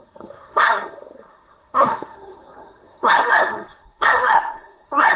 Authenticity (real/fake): fake